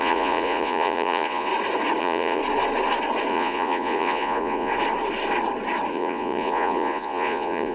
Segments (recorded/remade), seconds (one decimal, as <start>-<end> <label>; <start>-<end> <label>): 0.0-1.5 remade; 1.5-2.0 recorded; 2.0-2.4 remade; 2.4-3.3 recorded; 3.3-4.7 remade; 4.7-5.9 recorded; 5.9-7.7 remade